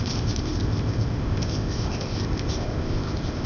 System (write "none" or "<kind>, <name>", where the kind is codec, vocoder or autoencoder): codec, ZipCodec